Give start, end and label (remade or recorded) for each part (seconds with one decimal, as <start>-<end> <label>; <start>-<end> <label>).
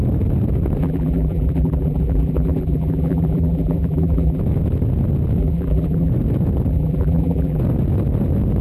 0.0-0.8 recorded; 0.8-4.4 remade; 4.4-5.4 recorded; 5.4-6.1 remade; 6.1-6.7 recorded; 6.7-7.6 remade; 7.6-8.6 recorded